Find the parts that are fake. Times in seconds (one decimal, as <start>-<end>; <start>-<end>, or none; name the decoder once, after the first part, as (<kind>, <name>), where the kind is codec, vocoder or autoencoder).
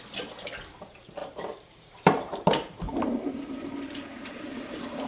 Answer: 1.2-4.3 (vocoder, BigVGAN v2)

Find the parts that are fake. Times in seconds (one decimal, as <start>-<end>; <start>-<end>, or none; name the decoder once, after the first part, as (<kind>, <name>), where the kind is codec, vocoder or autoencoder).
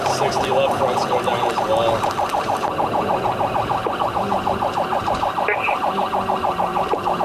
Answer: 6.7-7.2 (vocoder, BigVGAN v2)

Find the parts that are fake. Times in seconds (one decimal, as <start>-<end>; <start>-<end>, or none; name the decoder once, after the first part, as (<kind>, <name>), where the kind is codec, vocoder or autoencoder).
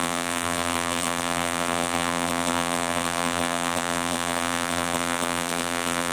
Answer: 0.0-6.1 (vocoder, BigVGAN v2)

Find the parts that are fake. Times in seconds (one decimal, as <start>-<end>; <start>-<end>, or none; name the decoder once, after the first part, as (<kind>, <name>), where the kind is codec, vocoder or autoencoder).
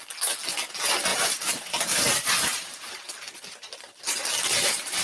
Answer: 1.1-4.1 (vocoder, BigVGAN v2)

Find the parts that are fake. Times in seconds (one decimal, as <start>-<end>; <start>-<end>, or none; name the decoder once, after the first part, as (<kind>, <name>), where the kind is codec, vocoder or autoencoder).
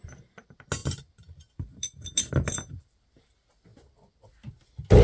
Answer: 0.8-3.2 (vocoder, BigVGAN v2)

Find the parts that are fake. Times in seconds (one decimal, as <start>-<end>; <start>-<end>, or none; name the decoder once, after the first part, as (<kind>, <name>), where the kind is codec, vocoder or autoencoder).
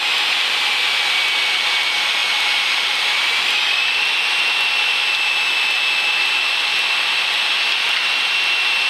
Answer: none